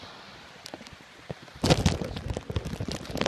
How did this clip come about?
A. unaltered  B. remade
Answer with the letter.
A